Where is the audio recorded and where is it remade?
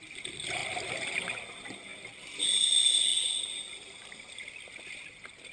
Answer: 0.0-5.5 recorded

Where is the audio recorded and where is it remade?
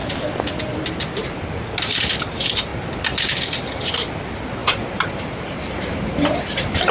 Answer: 0.0-4.6 recorded; 4.6-6.5 remade; 6.5-6.9 recorded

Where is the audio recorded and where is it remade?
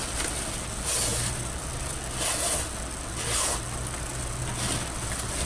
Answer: 0.0-5.5 recorded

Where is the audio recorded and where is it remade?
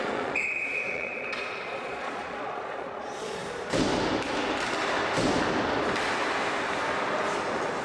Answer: 0.0-3.4 remade; 3.4-7.8 recorded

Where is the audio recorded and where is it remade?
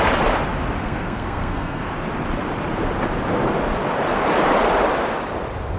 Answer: 0.0-0.8 recorded; 0.8-1.8 remade; 1.8-5.8 recorded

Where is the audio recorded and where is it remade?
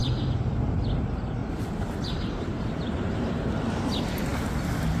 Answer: 0.0-1.4 recorded; 1.4-3.4 remade; 3.4-5.0 recorded